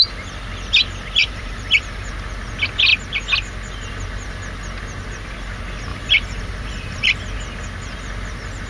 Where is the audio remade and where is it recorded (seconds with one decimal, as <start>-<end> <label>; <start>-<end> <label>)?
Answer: 0.0-1.2 recorded; 1.2-2.1 remade; 2.1-5.9 recorded; 5.9-7.2 remade; 7.2-8.7 recorded